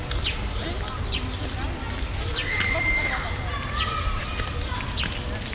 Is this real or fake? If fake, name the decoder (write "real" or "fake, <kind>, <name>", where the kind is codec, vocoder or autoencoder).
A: real